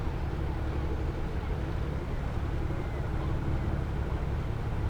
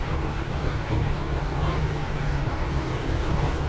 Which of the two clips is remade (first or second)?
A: second